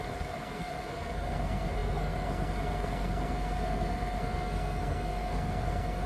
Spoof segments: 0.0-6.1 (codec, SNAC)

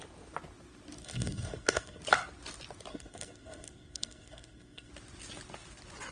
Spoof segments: 1.0-2.0 (codec, SNAC); 2.9-4.9

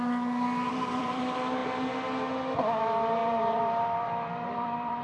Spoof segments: 0.7-1.2 (vocoder, BigVGAN v2); 3.2-5.0

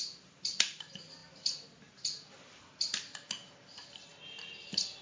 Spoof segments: none

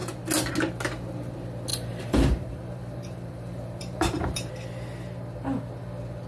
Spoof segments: 1.7-4.5 (vocoder, BigVGAN v2)

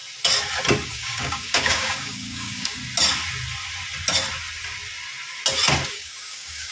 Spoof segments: 0.9-2.8 (codec, DAC); 5.9-6.7